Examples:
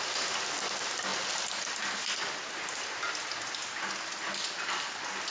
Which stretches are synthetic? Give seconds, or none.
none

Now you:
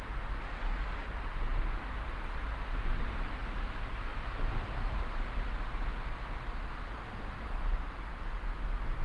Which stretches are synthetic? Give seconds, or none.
none

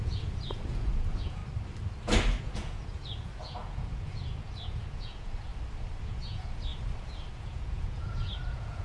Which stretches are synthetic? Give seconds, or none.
0.0-1.4 (vocoder, Vocos); 2.4-5.5; 6.1-6.7; 7.3-8.8

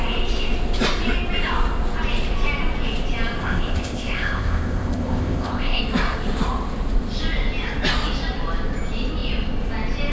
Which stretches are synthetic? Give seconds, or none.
3.4-5.8 (codec, ZipCodec)

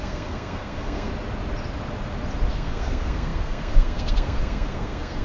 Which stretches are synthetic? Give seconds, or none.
0.0-1.1 (codec, SNAC); 2.5-5.2